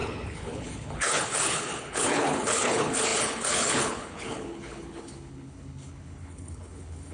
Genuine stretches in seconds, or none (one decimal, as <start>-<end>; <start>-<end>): none